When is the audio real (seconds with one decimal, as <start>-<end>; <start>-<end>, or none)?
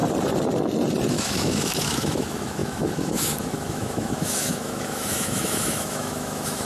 0.0-1.1